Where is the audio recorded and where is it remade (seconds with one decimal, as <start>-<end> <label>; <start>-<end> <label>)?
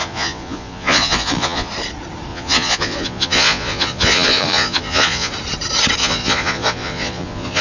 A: 0.0-1.7 remade; 1.7-2.3 recorded; 2.3-5.3 remade; 5.3-6.0 recorded; 6.0-7.6 remade